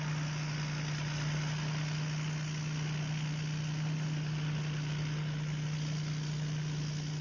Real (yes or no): yes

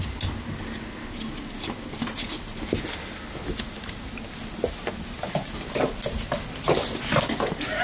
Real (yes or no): yes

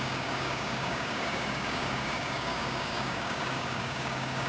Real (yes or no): no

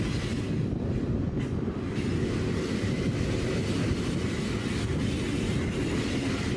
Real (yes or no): yes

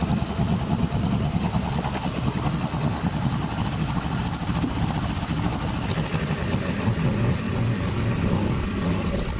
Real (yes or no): yes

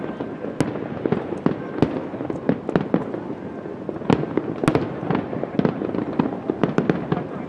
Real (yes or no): yes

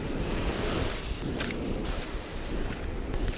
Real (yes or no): no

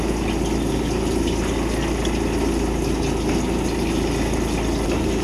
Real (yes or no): yes